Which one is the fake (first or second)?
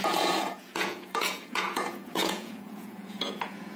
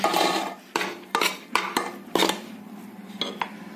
first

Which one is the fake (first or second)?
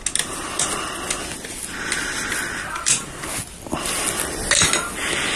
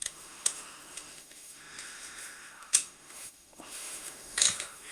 second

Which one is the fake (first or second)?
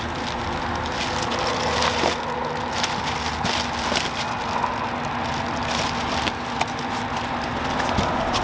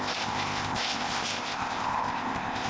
second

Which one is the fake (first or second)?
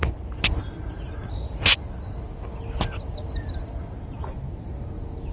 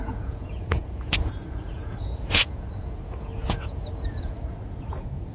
second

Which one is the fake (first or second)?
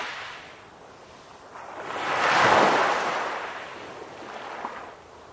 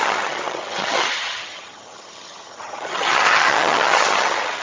second